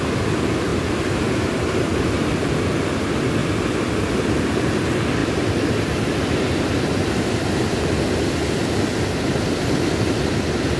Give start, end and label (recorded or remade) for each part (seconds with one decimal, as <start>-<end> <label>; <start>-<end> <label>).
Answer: 0.0-0.7 recorded; 0.7-2.0 remade; 2.0-3.4 recorded; 3.4-4.1 remade; 4.1-5.2 recorded; 5.2-6.7 remade; 6.7-10.8 recorded